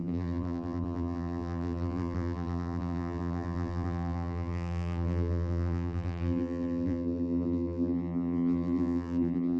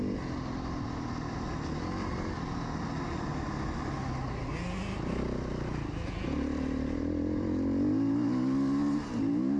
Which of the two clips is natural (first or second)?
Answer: second